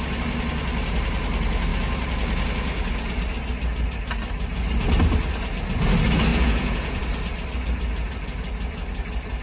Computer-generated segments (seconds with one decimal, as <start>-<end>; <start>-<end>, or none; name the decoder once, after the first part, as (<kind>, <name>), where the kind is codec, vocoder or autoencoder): 6.3-7.0 (vocoder, Vocos)